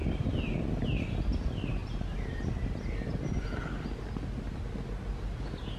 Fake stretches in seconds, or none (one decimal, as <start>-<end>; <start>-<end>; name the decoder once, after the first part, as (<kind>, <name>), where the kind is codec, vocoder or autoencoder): 0.0-0.6 (vocoder, BigVGAN v2); 1.8-4.6